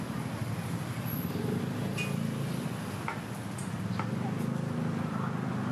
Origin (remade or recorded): recorded